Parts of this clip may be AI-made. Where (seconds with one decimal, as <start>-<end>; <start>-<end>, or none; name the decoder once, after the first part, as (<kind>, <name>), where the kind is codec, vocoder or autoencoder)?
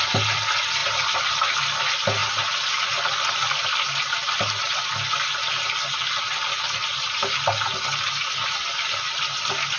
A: none